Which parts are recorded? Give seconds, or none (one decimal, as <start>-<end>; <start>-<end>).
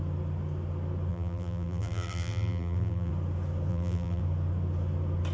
0.0-1.1; 3.1-3.7; 4.2-5.3